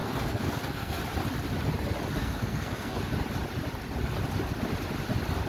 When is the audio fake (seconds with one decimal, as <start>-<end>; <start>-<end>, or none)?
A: 0.0-1.0; 2.2-3.1